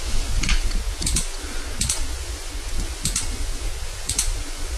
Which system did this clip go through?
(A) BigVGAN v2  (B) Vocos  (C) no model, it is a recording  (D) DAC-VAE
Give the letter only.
B